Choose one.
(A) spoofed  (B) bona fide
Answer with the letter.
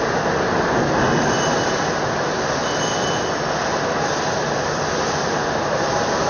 B